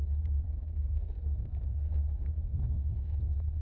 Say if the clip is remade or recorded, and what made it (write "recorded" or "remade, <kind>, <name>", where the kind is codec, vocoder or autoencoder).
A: remade, codec, SNAC